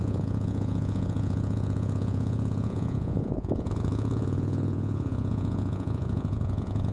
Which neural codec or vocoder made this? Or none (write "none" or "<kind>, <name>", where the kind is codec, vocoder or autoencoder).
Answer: vocoder, Vocos